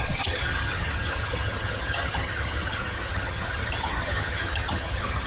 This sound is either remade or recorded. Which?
remade